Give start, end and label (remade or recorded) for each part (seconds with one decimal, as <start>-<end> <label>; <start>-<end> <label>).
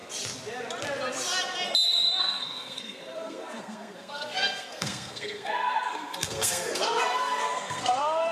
0.0-2.2 recorded; 2.2-8.3 remade